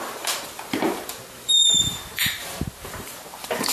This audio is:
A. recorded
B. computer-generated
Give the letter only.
B